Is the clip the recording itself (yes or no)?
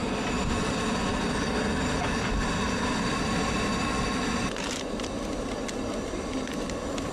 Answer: yes